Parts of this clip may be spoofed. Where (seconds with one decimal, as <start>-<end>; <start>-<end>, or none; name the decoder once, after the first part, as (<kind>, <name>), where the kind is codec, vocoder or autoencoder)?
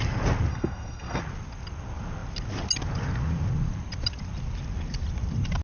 0.5-1.2 (codec, SNAC)